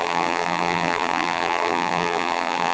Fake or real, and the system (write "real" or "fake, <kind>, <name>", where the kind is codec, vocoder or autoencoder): fake, vocoder, BigVGAN v2